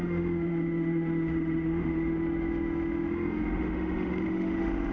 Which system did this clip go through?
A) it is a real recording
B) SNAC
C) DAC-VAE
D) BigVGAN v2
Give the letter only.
C